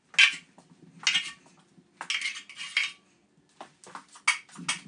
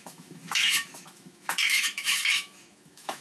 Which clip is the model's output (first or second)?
second